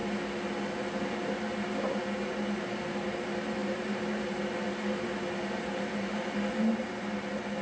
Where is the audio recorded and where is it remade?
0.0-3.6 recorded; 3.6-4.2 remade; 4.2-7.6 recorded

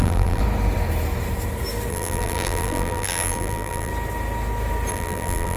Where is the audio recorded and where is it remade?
0.0-0.4 remade; 0.4-1.9 recorded; 1.9-3.9 remade; 3.9-4.9 recorded; 4.9-5.6 remade

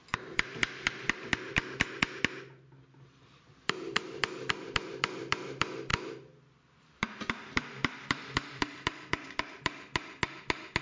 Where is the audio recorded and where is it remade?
0.0-1.5 remade; 1.5-3.2 recorded; 3.2-9.9 remade; 9.9-10.8 recorded